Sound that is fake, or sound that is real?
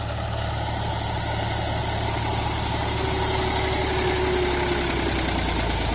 real